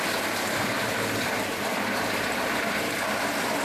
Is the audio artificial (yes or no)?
yes